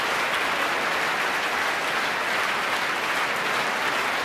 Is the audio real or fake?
real